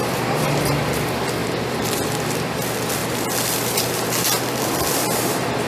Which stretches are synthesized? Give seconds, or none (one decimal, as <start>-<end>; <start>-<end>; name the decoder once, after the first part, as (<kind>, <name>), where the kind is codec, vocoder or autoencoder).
0.0-3.0 (vocoder, BigVGAN v2); 3.7-5.7